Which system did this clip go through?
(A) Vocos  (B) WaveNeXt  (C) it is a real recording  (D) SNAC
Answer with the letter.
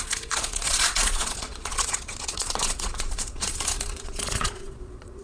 A